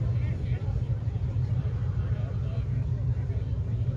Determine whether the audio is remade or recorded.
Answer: remade